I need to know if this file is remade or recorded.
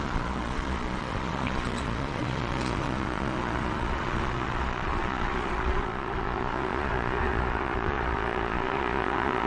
remade